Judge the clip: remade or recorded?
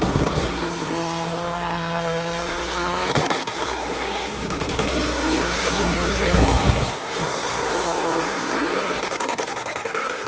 remade